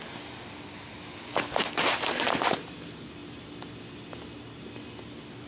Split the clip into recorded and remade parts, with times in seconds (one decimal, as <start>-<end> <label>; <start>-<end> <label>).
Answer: 0.0-5.5 recorded